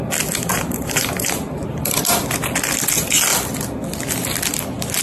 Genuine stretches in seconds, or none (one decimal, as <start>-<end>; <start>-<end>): 0.0-0.5; 2.0-5.0